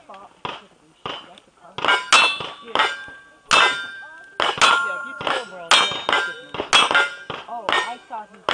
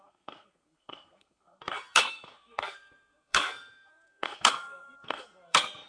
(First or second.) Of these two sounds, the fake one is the second